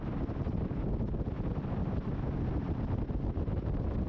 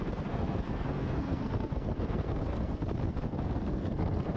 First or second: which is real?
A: first